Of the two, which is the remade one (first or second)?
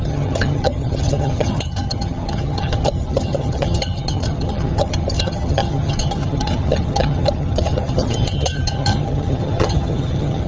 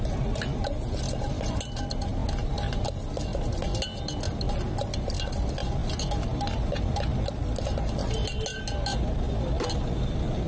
first